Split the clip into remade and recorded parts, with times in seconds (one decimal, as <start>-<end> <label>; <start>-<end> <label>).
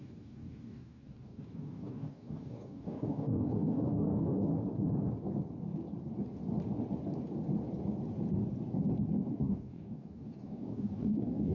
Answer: 0.0-4.5 remade; 4.5-9.3 recorded; 9.3-11.5 remade